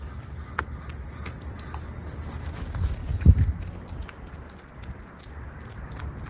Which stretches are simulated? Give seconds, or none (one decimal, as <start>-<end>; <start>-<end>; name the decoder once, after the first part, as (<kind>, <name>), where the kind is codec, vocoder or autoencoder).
none